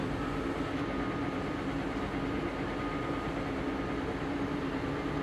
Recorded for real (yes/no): yes